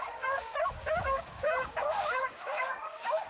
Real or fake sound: fake